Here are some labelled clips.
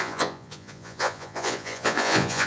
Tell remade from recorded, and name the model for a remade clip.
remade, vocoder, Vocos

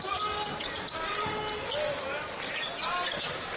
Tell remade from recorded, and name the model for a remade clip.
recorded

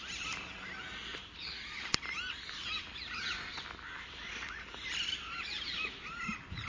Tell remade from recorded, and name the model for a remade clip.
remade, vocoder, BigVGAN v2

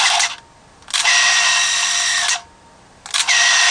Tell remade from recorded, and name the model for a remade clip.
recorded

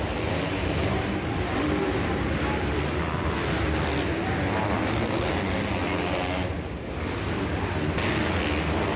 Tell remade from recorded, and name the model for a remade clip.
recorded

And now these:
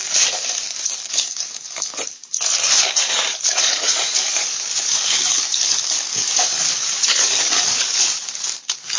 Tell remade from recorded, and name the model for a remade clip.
remade, codec, DAC